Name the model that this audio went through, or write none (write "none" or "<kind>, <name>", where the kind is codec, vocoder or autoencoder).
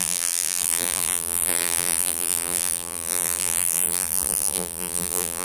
vocoder, BigVGAN v2